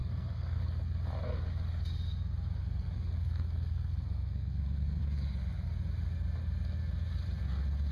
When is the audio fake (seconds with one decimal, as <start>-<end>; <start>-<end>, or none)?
0.0-0.6; 2.6-5.0